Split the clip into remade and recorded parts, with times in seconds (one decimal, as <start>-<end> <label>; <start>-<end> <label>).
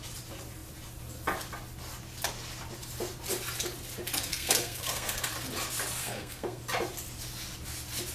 0.0-4.3 recorded; 4.3-5.3 remade; 5.3-6.0 recorded; 6.0-6.6 remade; 6.6-8.1 recorded